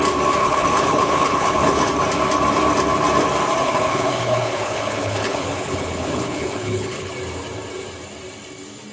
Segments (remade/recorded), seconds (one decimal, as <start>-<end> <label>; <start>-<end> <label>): 0.0-0.4 recorded; 0.4-1.9 remade; 1.9-3.6 recorded; 3.6-7.1 remade; 7.1-8.9 recorded